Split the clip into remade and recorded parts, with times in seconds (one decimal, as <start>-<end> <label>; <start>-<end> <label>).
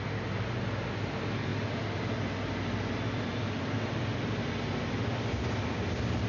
0.0-6.3 recorded